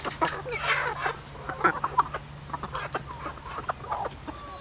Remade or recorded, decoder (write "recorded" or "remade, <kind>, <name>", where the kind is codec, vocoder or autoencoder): recorded